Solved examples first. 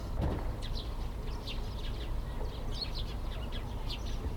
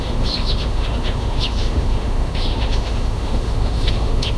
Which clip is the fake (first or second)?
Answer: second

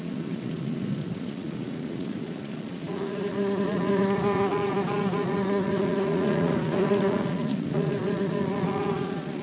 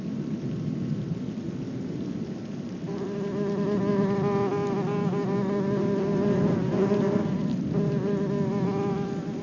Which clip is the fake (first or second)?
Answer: first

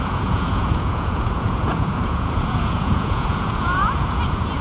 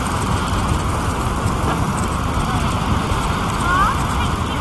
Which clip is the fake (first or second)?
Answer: first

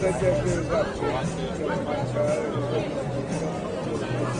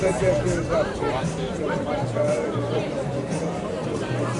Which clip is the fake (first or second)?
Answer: second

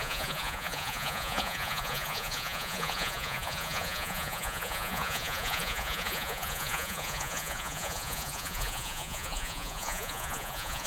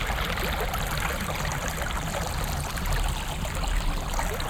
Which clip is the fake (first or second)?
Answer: first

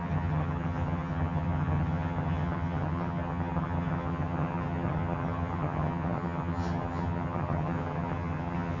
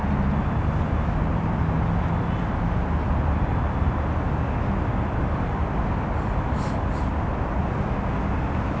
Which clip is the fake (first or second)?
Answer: first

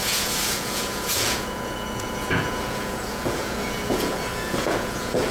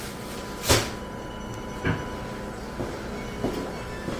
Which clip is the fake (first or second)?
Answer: first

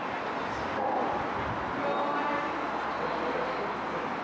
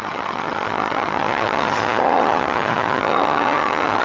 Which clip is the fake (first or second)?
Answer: second